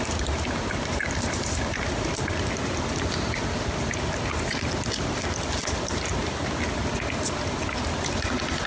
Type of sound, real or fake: real